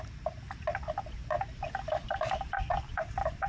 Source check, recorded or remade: remade